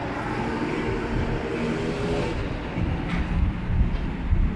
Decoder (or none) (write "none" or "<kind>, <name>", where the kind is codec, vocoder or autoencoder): none